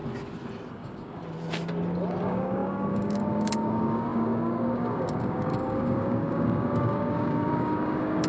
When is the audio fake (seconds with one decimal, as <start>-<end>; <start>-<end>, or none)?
0.7-1.2; 2.2-8.3